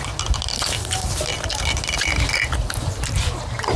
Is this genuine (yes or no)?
yes